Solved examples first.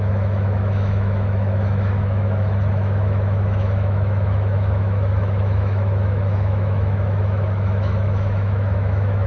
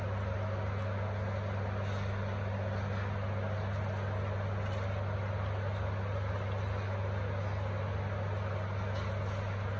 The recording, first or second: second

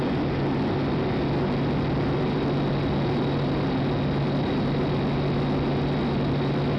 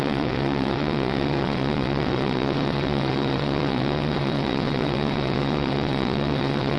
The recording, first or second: first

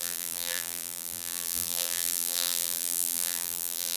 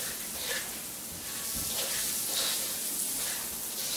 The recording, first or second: second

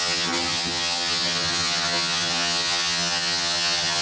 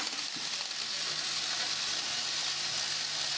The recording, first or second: second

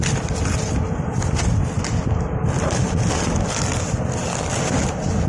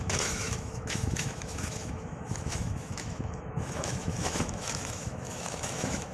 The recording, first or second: first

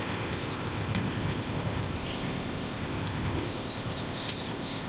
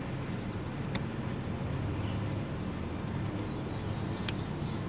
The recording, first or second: second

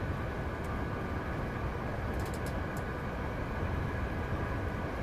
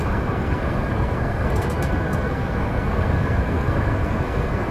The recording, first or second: first